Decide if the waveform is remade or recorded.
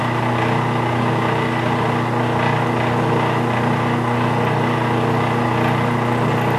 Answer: recorded